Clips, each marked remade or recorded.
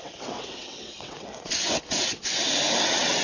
remade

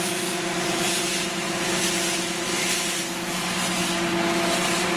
recorded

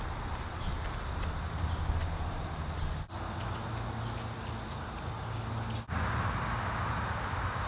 recorded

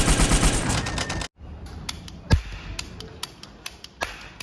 recorded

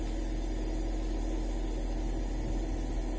recorded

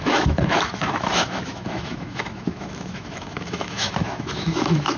remade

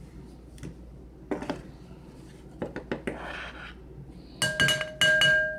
recorded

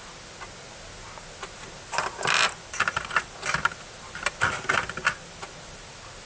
recorded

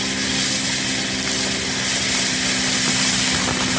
recorded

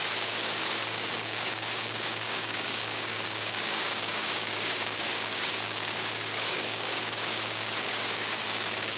remade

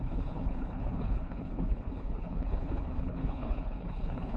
remade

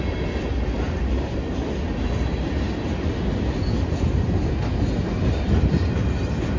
recorded